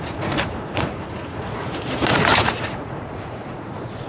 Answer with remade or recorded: remade